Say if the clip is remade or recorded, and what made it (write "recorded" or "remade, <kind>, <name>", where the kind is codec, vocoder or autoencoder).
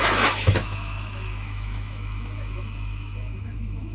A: remade, autoencoder, DAC-VAE